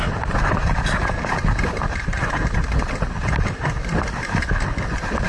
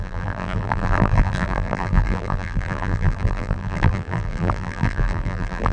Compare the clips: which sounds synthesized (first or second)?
second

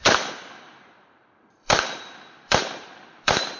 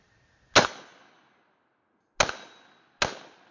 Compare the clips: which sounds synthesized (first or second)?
first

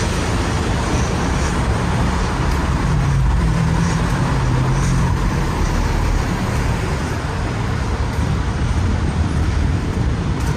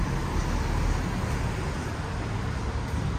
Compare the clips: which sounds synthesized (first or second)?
first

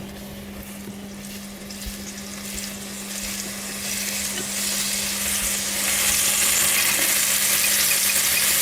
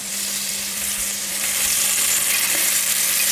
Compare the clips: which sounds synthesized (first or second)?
second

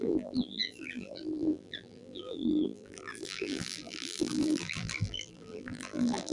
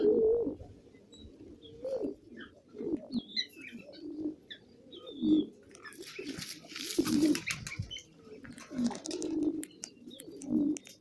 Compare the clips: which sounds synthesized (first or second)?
first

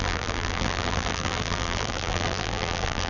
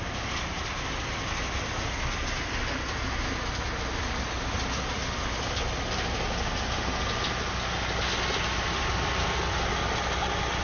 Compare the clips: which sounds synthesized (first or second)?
first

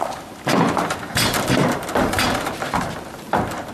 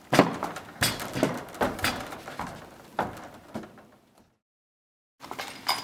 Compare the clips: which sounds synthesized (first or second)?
first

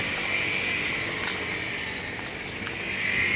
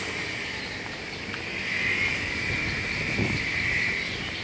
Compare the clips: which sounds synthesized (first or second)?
second